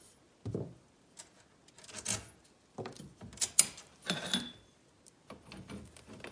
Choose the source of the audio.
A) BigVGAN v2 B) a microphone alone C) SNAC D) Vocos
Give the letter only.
B